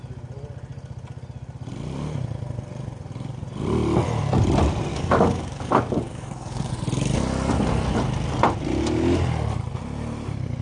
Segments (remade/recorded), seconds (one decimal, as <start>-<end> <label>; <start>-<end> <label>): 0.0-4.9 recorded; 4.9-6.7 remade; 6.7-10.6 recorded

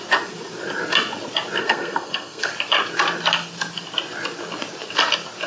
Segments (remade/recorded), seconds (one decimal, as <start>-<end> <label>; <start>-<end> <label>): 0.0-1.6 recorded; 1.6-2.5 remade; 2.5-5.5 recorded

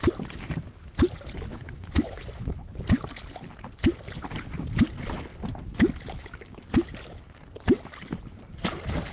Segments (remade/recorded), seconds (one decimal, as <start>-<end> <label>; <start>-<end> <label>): 0.0-1.5 recorded; 1.5-2.8 remade; 2.8-9.1 recorded